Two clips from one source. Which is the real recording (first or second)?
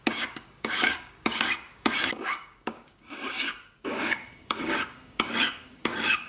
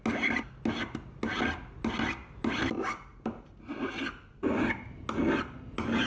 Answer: second